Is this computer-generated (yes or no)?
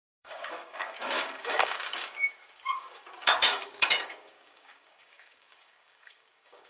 yes